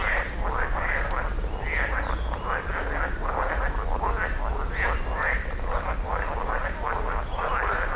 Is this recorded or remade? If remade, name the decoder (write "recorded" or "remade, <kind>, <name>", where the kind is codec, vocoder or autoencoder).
recorded